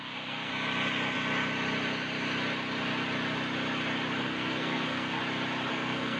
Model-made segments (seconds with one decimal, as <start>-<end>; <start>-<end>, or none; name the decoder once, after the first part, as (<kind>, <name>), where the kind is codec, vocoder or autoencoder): 0.0-0.5 (codec, SNAC); 4.2-5.2; 5.7-6.2